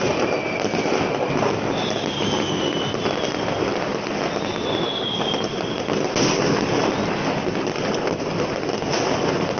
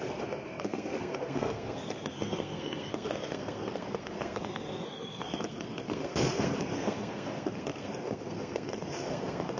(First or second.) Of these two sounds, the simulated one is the second